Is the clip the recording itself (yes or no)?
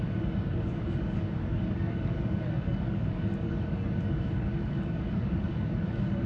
no